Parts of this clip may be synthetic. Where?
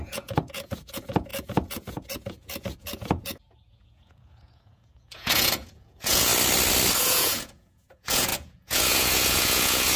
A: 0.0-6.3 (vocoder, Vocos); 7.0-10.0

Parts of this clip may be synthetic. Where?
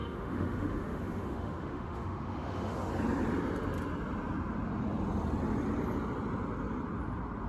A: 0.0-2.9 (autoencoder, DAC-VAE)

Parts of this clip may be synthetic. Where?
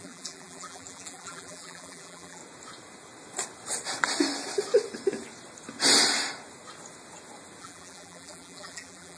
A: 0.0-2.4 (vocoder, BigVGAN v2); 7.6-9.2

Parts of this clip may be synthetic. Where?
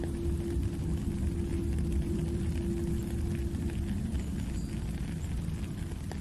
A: 1.5-2.5 (vocoder, BigVGAN v2)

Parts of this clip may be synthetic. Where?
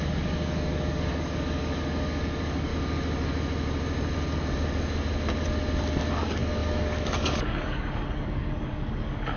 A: 0.0-2.7 (codec, DAC); 6.1-9.4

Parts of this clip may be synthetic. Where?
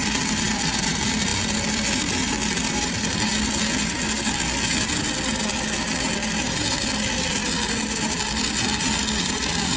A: 0.0-3.3 (vocoder, BigVGAN v2); 6.4-7.4; 9.2-9.8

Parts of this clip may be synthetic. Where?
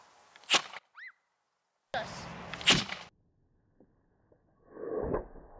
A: none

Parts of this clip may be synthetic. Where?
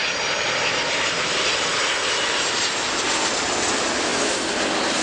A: none